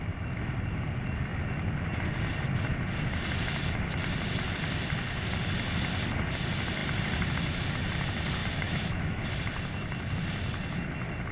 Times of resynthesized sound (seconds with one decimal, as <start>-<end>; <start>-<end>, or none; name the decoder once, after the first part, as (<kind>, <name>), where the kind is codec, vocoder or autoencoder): 8.4-9.2 (autoencoder, DAC-VAE)